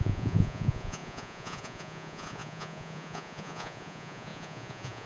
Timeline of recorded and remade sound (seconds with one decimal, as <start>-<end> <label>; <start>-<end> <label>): 0.0-5.1 remade